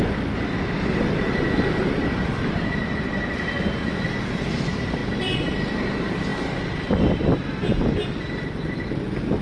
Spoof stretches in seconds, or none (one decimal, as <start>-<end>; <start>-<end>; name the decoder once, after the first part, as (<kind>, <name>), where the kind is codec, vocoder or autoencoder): none